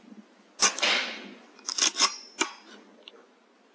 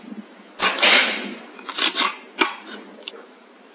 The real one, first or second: first